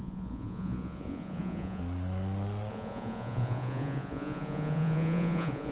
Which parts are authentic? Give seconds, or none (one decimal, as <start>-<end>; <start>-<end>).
1.8-2.7